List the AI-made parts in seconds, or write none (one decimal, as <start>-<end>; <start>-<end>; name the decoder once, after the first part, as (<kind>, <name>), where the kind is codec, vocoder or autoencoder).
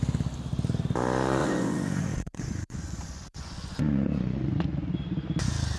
1.4-4.9 (vocoder, Vocos)